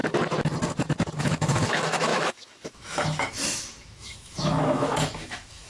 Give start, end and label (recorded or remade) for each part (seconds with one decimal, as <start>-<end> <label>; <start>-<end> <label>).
0.0-1.2 recorded; 1.2-5.7 remade